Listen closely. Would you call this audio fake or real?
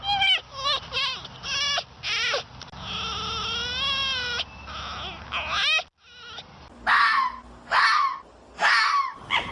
real